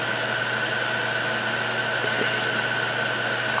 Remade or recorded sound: recorded